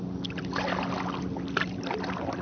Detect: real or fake real